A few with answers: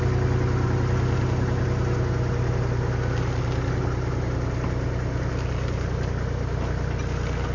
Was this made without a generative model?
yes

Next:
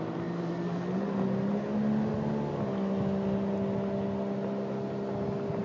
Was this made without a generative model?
yes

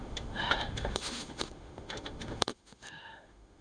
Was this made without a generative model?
no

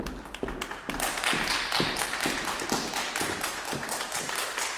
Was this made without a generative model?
yes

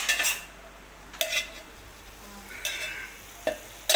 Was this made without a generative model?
yes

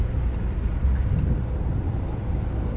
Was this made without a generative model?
yes